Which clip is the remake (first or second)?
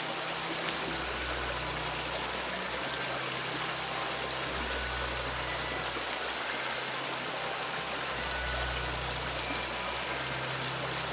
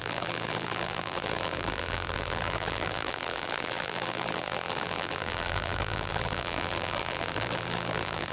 second